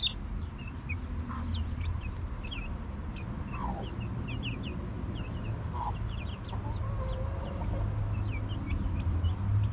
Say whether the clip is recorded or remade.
recorded